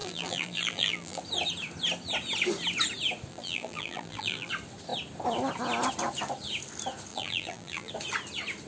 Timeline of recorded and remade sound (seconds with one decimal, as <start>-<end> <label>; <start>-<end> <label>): 0.0-1.2 remade; 1.2-3.3 recorded; 3.3-4.5 remade; 4.5-7.1 recorded; 7.1-7.9 remade; 7.9-8.7 recorded